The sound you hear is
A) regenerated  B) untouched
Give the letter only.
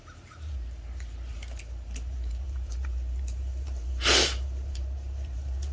A